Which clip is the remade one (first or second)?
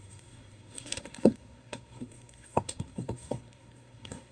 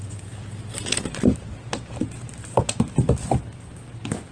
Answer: first